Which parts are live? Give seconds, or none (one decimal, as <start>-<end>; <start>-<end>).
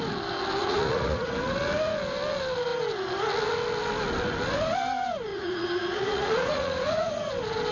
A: 0.0-0.6; 1.3-5.3; 7.3-7.7